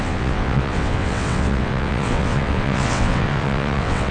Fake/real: fake